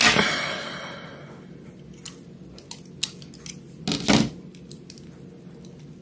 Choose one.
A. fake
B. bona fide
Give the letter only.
B